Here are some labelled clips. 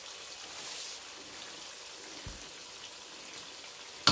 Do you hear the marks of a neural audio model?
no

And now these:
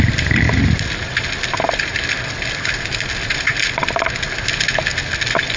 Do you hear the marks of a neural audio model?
no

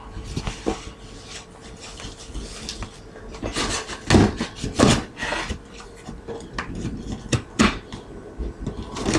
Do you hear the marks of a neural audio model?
no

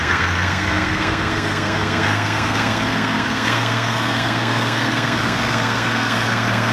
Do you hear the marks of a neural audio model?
yes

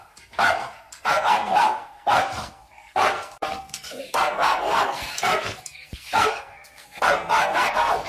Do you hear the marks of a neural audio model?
yes